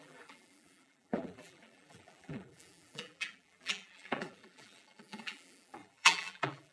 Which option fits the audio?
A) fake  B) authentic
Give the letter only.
A